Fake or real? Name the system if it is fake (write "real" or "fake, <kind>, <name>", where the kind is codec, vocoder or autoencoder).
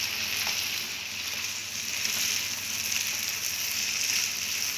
real